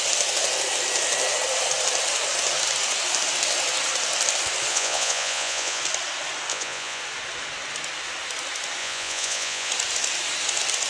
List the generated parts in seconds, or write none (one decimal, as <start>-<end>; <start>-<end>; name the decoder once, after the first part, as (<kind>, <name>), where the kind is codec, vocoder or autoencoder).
4.7-5.8 (vocoder, Vocos); 6.5-7.0; 8.8-9.7